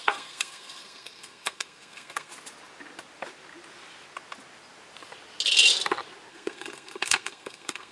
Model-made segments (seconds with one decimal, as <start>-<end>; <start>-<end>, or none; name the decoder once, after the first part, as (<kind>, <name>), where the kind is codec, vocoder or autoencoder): 0.0-2.3 (codec, SNAC); 6.3-7.9